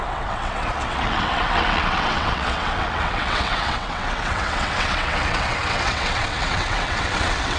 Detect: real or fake fake